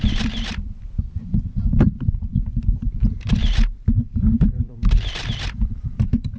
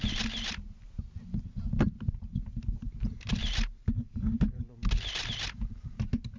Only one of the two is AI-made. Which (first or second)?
first